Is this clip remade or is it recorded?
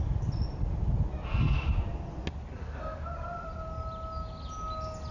recorded